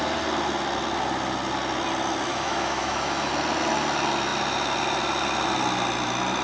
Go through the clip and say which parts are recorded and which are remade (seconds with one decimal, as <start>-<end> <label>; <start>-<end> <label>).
0.0-2.3 recorded; 2.3-3.3 remade; 3.3-6.4 recorded